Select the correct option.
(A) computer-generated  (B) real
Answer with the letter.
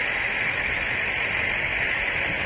B